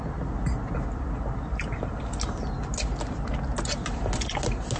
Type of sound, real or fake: real